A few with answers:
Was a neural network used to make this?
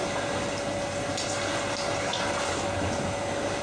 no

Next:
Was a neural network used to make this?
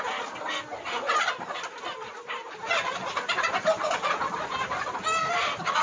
no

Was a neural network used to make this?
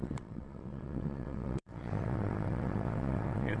yes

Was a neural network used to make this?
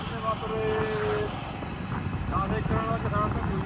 no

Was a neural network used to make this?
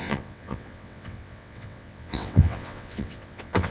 yes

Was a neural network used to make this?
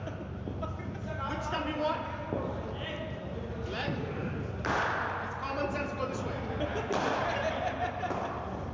no